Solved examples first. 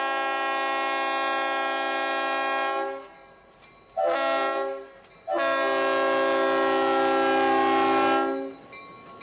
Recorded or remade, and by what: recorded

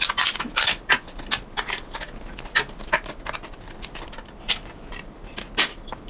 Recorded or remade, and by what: recorded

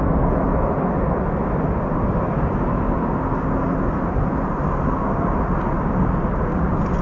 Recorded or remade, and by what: recorded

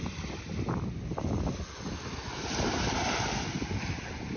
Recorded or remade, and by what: recorded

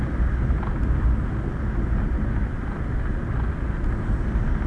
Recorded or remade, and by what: recorded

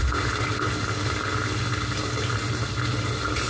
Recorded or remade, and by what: recorded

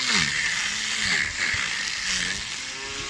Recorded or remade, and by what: recorded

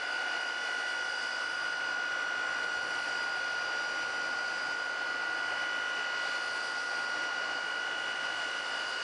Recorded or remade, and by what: recorded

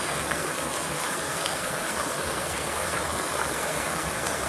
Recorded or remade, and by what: remade, codec, SNAC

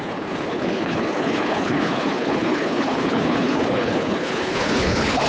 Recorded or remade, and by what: remade, codec, HILCodec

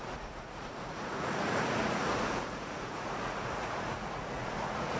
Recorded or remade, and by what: remade, vocoder, Vocos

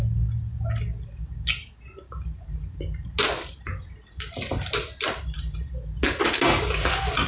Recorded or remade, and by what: recorded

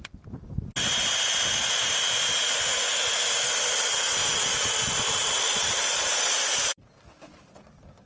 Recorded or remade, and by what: recorded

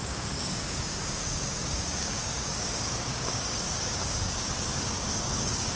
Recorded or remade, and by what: remade, codec, DAC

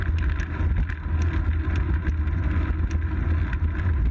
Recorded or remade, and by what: recorded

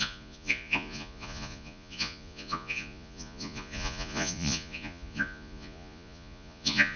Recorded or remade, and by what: remade, vocoder, Vocos